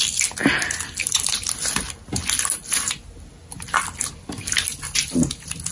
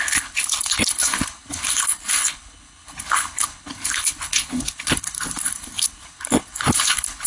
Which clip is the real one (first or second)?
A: first